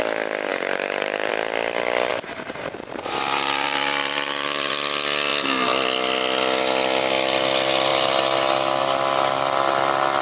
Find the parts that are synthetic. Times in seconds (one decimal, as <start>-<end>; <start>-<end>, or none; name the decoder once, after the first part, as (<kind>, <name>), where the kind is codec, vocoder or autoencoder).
0.5-1.3 (vocoder, BigVGAN v2); 2.1-4.7